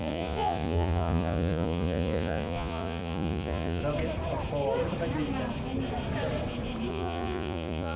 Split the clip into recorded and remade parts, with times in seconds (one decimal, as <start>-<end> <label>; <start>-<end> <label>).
0.0-3.8 remade; 3.8-6.9 recorded; 6.9-8.0 remade